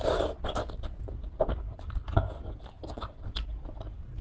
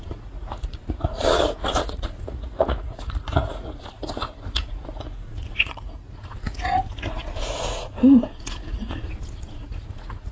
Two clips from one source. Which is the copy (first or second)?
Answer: second